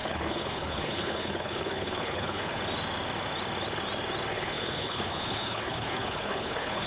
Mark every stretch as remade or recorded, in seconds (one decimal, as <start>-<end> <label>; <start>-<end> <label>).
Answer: 0.0-2.6 remade; 2.6-4.3 recorded; 4.3-6.9 remade